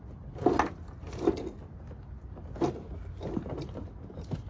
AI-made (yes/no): no